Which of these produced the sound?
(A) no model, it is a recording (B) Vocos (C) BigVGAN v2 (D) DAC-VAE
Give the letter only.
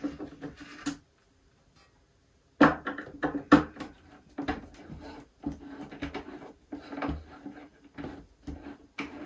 A